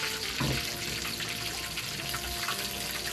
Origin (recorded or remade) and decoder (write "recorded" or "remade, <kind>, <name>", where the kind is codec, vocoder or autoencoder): recorded